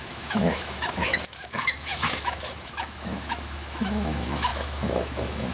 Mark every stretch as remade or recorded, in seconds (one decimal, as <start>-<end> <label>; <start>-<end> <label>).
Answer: 0.0-5.5 remade